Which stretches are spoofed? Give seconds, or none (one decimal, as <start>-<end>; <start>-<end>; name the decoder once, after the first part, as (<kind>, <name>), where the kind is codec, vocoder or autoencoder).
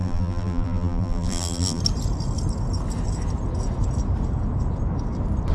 0.0-1.8 (vocoder, BigVGAN v2)